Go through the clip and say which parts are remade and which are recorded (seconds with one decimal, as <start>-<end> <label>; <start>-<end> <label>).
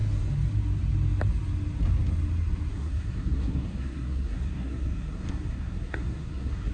0.0-2.7 recorded; 2.7-6.7 remade